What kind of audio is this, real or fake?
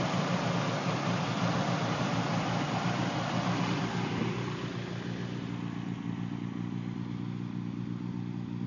real